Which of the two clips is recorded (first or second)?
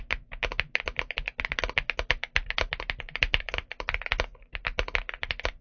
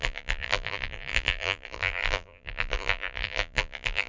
first